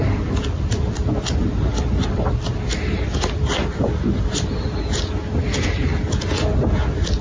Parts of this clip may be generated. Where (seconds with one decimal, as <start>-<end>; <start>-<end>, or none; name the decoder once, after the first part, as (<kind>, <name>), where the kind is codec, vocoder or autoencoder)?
none